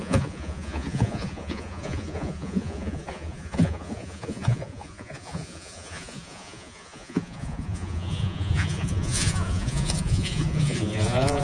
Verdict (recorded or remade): remade